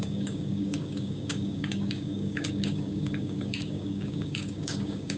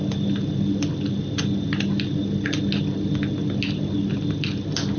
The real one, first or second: second